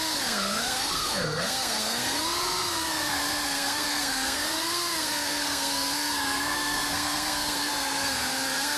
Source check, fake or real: fake